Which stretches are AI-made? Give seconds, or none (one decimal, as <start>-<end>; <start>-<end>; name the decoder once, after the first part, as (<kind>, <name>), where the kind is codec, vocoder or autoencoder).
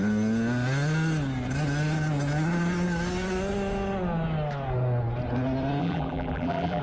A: 5.8-6.8 (vocoder, BigVGAN v2)